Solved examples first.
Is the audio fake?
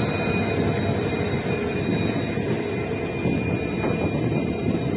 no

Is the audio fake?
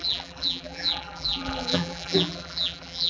yes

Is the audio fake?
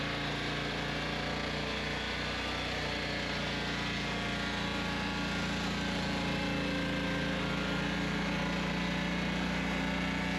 no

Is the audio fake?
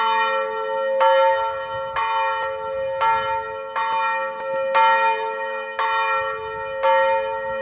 no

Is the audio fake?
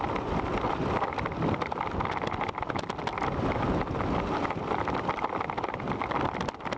no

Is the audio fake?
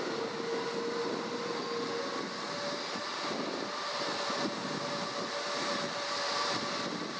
no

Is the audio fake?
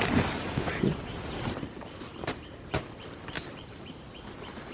no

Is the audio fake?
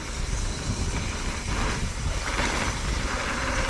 no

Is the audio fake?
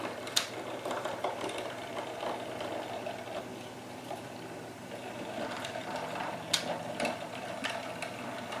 yes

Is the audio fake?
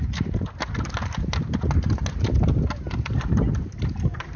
no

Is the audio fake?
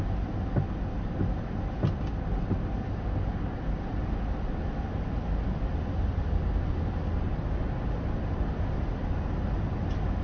no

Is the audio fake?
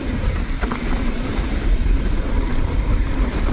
no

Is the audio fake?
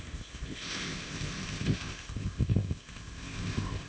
yes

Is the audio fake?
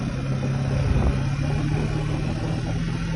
no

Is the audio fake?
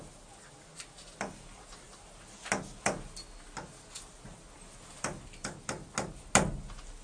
no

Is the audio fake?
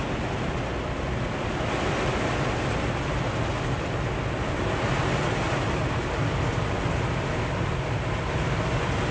no